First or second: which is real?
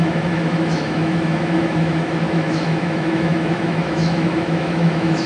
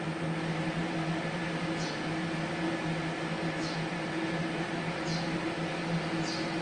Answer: second